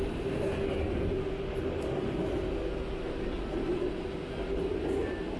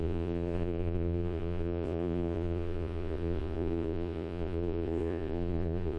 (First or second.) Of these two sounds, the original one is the first